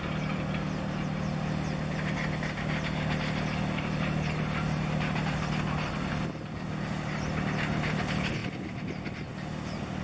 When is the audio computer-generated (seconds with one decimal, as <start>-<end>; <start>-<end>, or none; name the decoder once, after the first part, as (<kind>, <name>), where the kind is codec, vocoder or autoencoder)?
none